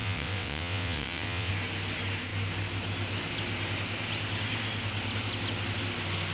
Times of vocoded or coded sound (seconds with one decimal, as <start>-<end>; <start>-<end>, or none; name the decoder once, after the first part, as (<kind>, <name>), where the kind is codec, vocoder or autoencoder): 0.0-1.5 (vocoder, WaveNeXt)